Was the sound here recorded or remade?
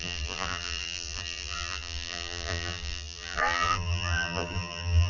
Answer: remade